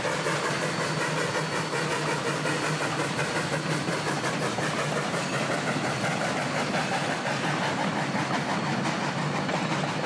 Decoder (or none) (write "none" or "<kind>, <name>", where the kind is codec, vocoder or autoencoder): none